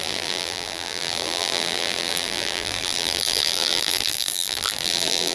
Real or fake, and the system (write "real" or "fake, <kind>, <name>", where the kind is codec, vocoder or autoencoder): fake, vocoder, BigVGAN v2